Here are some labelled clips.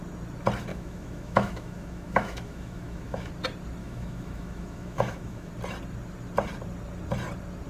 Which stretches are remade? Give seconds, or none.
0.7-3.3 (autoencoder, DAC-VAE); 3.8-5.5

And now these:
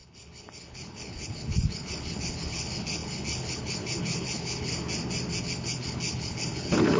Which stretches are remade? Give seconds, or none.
0.0-4.7 (codec, HILCodec); 5.4-7.0

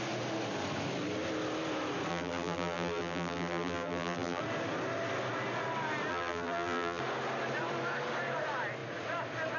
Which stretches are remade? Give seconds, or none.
2.1-4.4 (vocoder, BigVGAN v2); 6.1-7.0

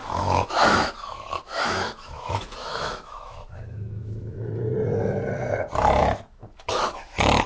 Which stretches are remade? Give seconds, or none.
0.0-4.5 (autoencoder, DAC-VAE); 6.0-7.5

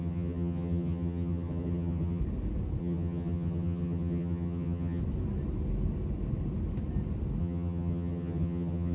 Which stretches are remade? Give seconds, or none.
0.0-2.2 (vocoder, HiFi-GAN); 2.8-5.0; 7.4-8.9